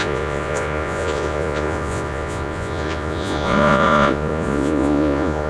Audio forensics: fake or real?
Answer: fake